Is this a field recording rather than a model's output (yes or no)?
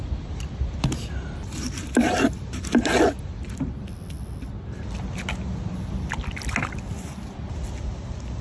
yes